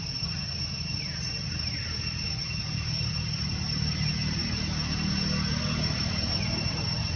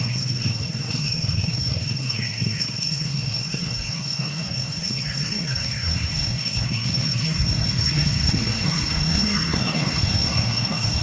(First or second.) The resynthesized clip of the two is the second